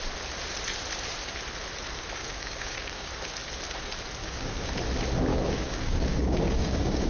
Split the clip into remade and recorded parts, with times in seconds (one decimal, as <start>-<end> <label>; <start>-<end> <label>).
0.0-2.2 recorded; 2.2-3.1 remade; 3.1-4.2 recorded; 4.2-4.7 remade; 4.7-5.3 recorded; 5.3-7.1 remade